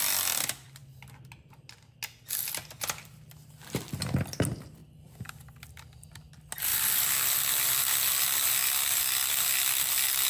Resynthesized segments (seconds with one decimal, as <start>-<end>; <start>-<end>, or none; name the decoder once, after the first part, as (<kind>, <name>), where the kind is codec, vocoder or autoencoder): 8.6-9.3 (vocoder, BigVGAN v2)